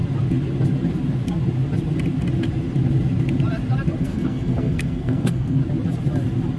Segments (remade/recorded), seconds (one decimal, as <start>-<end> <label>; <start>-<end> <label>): 0.0-4.0 recorded; 4.0-5.6 remade; 5.6-6.6 recorded